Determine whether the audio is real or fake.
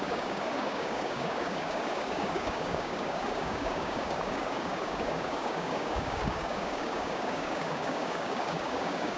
fake